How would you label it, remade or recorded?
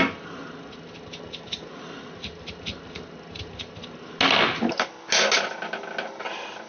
recorded